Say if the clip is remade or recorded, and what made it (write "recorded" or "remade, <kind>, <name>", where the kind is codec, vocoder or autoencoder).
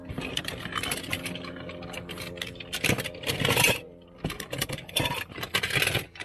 recorded